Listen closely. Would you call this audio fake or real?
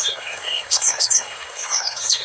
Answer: fake